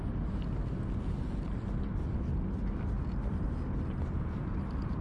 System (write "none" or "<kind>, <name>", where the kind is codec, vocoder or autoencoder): none